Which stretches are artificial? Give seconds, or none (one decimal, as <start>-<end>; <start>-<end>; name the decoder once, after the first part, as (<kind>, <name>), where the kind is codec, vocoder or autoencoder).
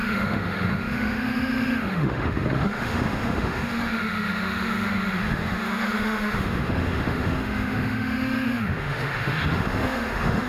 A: 0.0-10.5 (autoencoder, DAC-VAE)